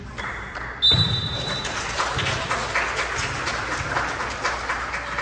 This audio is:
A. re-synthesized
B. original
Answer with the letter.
B